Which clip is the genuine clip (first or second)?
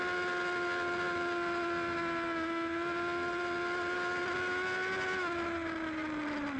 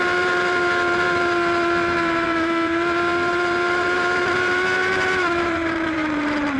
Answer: first